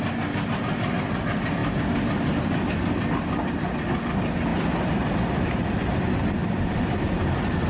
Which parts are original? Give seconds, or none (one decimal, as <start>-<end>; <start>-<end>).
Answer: 0.0-4.5; 5.1-6.4; 7.1-7.7